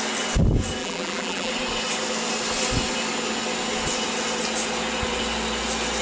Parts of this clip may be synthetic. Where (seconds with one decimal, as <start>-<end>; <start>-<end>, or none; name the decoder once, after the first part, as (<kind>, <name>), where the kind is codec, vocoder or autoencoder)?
0.8-1.5 (vocoder, BigVGAN v2)